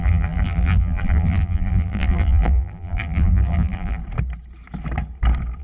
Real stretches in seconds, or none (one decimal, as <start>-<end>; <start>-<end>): 4.0-5.6